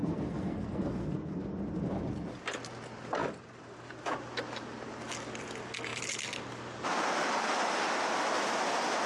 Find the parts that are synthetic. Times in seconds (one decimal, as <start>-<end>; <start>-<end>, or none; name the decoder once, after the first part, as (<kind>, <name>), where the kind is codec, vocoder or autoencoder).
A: 0.0-1.4 (codec, SNAC)